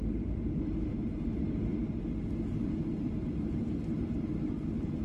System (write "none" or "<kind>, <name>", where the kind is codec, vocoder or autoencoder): vocoder, BigVGAN v2